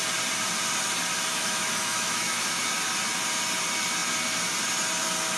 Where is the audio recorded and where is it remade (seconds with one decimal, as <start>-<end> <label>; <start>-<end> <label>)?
0.0-1.3 recorded; 1.3-2.6 remade; 2.6-5.4 recorded